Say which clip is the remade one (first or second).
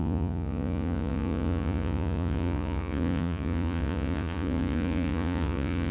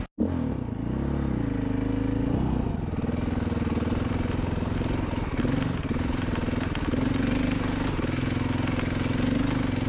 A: first